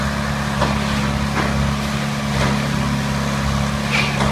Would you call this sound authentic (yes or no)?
yes